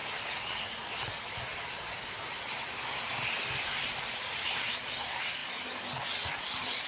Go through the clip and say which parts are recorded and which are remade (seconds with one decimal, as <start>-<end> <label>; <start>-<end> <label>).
0.0-4.1 recorded; 4.1-5.4 remade; 5.4-6.3 recorded; 6.3-6.9 remade